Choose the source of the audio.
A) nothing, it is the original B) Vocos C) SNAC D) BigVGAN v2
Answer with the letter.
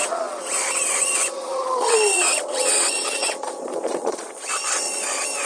B